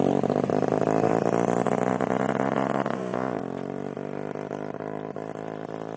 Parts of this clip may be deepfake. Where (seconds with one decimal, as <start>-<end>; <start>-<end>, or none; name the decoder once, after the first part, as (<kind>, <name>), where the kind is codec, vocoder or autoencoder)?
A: 1.9-3.4 (vocoder, Vocos)

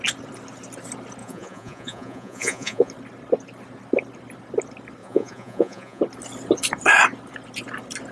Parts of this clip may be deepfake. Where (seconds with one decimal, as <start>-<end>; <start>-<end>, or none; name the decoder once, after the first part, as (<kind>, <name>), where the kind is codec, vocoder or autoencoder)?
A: 1.2-2.9 (vocoder, Vocos); 5.0-6.0

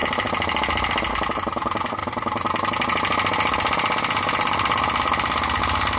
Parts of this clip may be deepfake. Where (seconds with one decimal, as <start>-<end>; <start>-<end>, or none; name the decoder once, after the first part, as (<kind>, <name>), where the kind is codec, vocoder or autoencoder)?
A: none

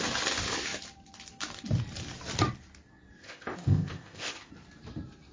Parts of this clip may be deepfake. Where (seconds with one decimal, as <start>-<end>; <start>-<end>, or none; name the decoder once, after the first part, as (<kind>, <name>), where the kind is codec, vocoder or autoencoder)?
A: 3.2-4.5 (codec, ZipCodec)